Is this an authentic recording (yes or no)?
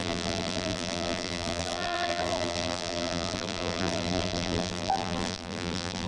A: no